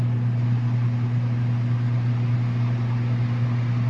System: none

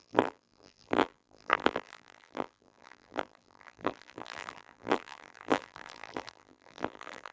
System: vocoder, BigVGAN v2